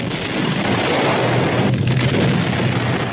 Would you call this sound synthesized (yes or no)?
no